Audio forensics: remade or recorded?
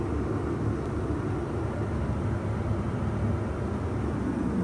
recorded